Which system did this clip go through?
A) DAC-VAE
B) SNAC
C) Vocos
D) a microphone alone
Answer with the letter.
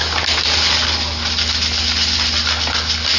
D